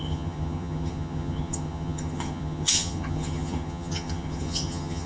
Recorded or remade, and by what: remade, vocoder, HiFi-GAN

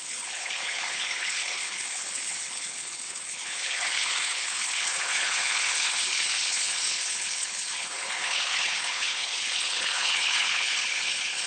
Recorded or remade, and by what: remade, codec, HILCodec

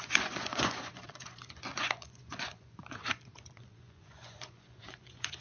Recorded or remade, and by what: remade, vocoder, Vocos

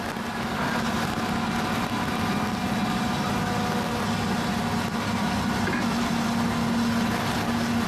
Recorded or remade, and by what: recorded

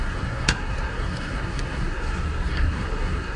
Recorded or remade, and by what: remade, codec, SNAC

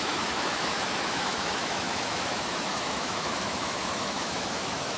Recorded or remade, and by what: remade, autoencoder, DAC-VAE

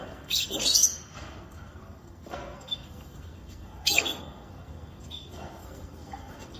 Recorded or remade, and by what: remade, codec, SNAC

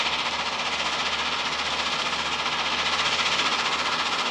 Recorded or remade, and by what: recorded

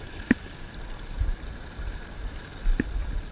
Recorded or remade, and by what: recorded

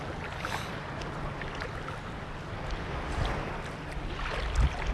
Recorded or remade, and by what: recorded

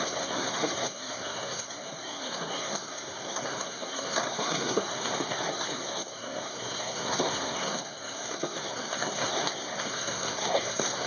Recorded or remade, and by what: remade, codec, SNAC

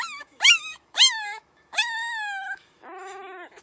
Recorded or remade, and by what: remade, autoencoder, DAC-VAE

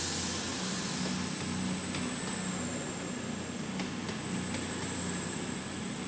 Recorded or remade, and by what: recorded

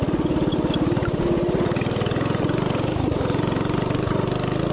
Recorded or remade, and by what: recorded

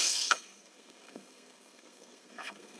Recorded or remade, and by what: remade, codec, SNAC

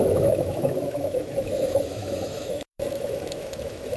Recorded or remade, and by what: remade, autoencoder, DAC-VAE